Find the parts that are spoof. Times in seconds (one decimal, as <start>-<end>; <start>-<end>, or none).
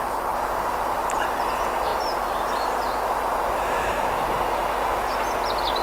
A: 1.9-2.5